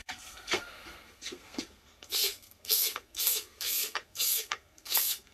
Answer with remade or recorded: remade